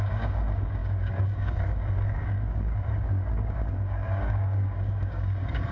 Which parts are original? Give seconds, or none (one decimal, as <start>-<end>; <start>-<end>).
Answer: none